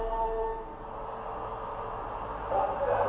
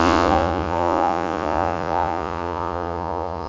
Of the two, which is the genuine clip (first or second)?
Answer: first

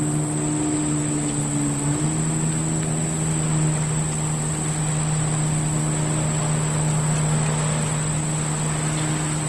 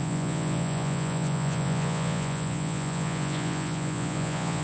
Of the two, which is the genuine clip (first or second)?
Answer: first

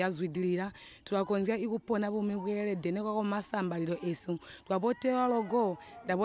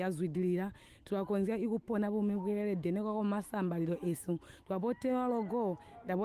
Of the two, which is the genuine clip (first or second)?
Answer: first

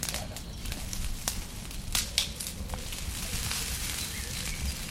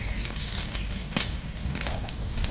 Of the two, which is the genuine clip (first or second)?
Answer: first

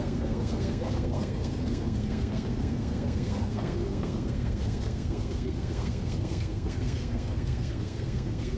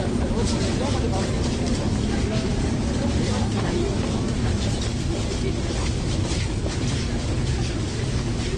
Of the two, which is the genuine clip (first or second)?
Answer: second